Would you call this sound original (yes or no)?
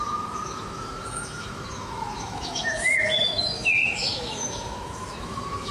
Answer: no